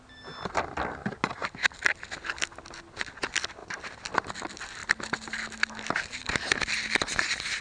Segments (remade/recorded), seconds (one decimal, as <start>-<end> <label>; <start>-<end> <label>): 0.0-3.6 recorded; 3.6-4.1 remade; 4.1-7.6 recorded